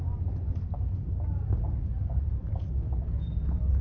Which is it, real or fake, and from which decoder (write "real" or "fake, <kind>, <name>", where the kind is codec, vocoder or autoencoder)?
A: real